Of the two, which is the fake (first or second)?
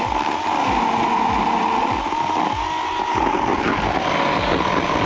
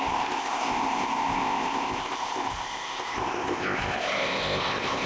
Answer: second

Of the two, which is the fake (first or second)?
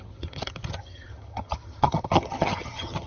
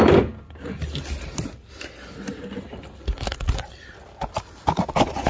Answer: first